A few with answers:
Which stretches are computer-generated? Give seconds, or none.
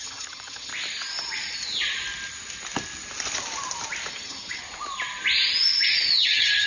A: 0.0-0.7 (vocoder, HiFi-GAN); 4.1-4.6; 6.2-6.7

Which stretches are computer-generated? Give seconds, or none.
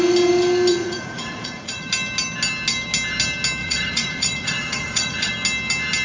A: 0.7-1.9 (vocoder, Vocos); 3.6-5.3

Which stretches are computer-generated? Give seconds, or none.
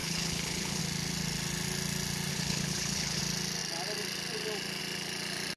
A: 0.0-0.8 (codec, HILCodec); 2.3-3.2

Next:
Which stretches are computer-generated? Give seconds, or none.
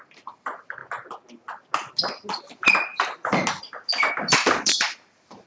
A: 0.0-0.8 (vocoder, BigVGAN v2); 2.4-2.9; 4.5-5.5